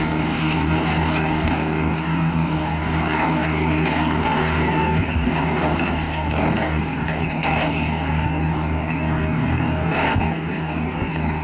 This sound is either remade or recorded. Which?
remade